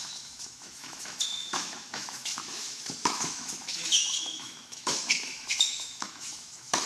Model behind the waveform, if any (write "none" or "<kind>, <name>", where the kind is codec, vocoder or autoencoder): autoencoder, DAC-VAE